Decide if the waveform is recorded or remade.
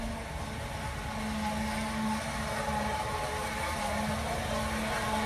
recorded